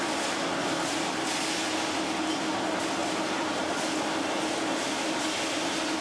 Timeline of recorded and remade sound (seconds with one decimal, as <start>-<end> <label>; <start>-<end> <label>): 0.0-6.0 recorded